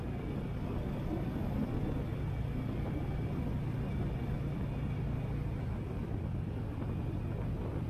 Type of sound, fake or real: real